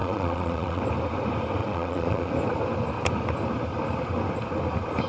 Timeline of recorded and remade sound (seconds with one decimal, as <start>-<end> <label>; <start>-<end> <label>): 0.0-0.8 remade; 0.8-1.6 recorded; 1.6-2.3 remade; 2.3-5.1 recorded